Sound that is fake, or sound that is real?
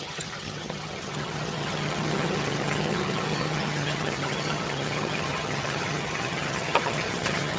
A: fake